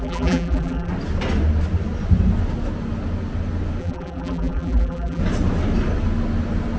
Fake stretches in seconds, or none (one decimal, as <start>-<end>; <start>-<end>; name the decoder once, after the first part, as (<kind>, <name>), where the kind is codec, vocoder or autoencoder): 0.0-0.9 (vocoder, BigVGAN v2); 3.8-5.2